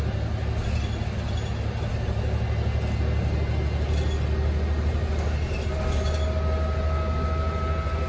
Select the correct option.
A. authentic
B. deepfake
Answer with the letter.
A